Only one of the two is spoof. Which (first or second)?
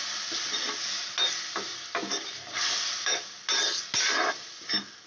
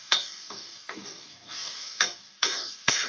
second